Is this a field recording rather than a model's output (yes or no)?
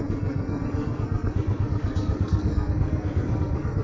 no